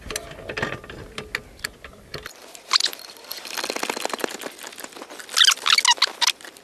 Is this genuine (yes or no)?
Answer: yes